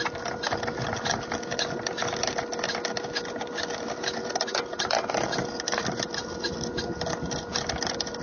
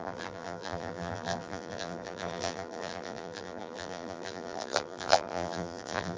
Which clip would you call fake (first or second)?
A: second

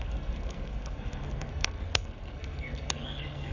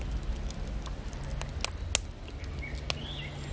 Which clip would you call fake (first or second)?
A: first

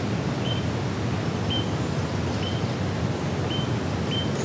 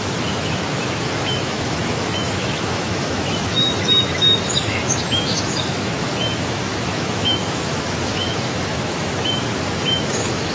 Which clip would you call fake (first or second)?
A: second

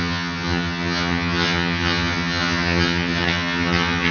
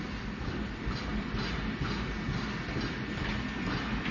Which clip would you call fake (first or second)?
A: first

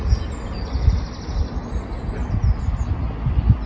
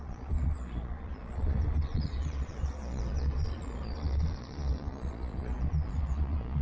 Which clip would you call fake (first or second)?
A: second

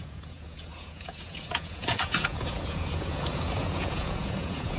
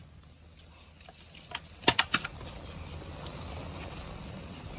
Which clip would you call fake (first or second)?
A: first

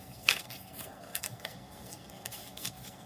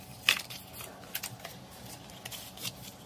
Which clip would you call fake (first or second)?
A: first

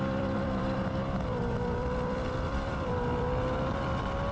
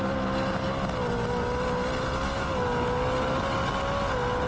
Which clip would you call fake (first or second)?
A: first